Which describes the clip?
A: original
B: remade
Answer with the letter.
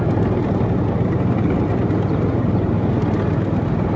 A